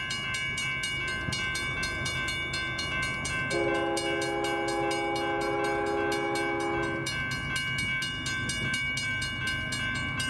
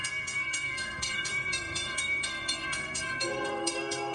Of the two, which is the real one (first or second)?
first